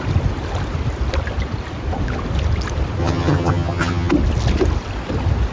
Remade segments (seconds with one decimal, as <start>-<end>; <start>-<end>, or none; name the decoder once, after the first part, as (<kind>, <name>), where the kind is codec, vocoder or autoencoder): 3.0-4.1 (vocoder, HiFi-GAN)